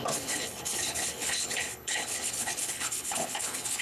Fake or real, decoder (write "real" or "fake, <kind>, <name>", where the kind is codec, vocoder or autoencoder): fake, codec, HILCodec